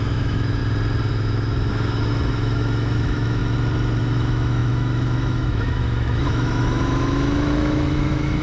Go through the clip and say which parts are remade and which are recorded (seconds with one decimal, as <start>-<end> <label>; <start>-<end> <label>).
0.0-0.6 remade; 0.6-1.1 recorded; 1.1-3.4 remade; 3.4-4.0 recorded; 4.0-8.4 remade